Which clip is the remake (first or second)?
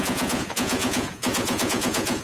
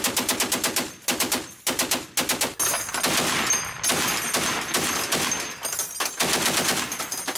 first